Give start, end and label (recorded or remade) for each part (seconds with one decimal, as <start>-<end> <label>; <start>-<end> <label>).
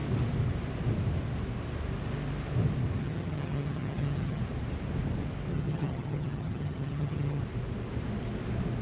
0.0-3.0 recorded; 3.0-4.4 remade; 4.4-5.5 recorded; 5.5-7.4 remade; 7.4-8.8 recorded